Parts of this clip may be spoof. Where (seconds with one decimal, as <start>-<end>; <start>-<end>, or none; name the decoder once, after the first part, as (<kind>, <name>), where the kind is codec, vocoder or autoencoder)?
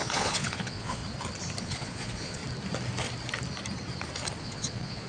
0.0-1.0 (vocoder, Vocos); 1.6-2.4; 4.4-5.1